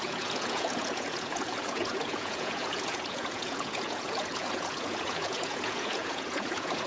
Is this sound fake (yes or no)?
yes